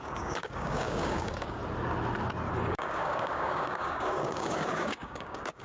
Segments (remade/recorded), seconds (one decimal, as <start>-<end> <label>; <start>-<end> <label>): 0.0-1.6 remade; 1.6-2.7 recorded; 2.7-5.6 remade